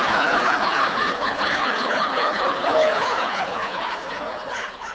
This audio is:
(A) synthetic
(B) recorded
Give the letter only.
A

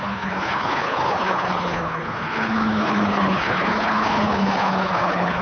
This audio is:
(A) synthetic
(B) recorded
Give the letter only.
A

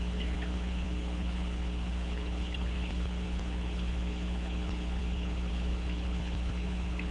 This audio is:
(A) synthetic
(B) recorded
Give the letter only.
A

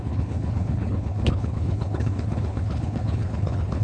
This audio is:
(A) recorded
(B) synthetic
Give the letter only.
B